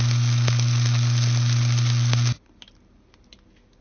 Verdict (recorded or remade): recorded